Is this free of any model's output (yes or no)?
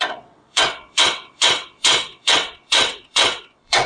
no